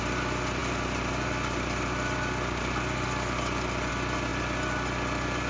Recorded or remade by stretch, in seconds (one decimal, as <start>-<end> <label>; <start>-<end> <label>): 0.0-5.5 recorded